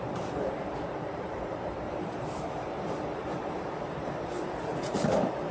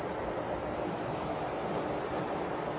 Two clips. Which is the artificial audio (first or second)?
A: first